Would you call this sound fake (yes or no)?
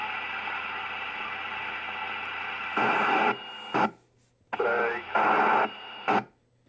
no